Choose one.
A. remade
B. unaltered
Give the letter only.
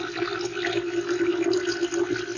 B